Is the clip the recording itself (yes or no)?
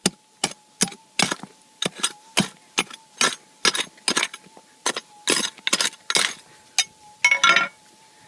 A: yes